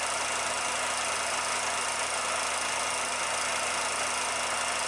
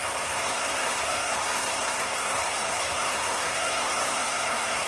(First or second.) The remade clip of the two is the second